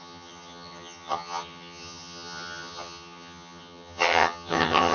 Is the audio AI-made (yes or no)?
yes